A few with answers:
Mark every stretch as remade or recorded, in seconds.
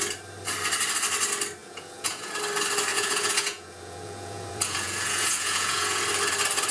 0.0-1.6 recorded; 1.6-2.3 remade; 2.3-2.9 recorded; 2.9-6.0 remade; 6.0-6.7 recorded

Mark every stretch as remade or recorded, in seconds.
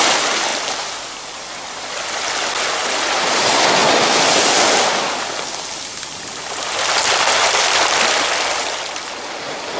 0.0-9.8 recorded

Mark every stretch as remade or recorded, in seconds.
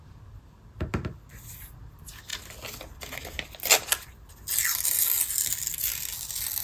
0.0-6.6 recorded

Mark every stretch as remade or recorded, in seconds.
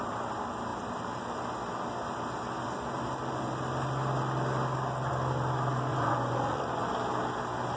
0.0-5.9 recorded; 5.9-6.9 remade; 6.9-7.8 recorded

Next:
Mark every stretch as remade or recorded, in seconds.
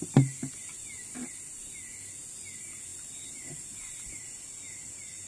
0.0-5.3 recorded